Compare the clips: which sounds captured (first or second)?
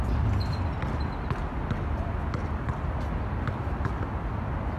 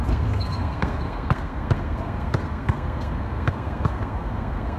first